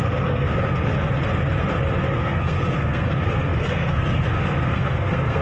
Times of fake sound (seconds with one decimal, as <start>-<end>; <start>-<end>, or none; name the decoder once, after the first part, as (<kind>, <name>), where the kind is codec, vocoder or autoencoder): 0.0-0.9 (codec, SNAC); 2.1-5.4